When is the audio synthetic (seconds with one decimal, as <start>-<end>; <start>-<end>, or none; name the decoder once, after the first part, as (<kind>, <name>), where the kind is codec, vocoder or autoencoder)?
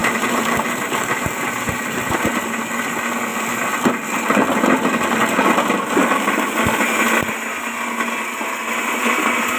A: 0.0-1.9 (vocoder, BigVGAN v2); 6.0-7.0